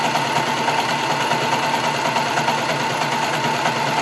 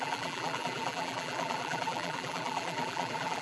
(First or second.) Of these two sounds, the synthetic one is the second